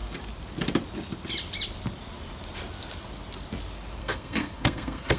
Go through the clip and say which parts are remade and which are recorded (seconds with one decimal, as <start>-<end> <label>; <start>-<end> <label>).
0.0-4.0 recorded; 4.0-5.2 remade